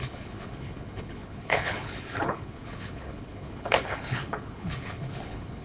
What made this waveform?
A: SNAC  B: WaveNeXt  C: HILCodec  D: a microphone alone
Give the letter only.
C